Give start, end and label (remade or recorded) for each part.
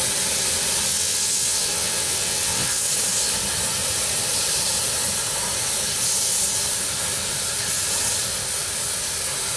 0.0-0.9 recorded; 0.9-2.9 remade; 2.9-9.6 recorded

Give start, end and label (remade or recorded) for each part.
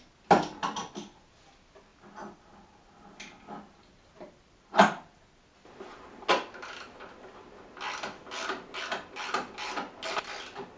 0.0-10.8 recorded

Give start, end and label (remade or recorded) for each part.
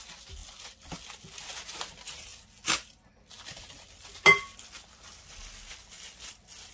0.0-6.7 recorded